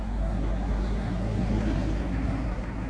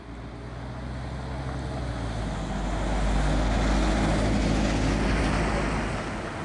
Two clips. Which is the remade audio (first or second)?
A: first